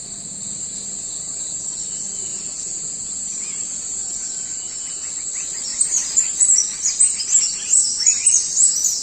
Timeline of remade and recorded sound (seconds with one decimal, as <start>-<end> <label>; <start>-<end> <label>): 0.0-2.3 recorded; 2.3-5.1 remade; 5.1-9.0 recorded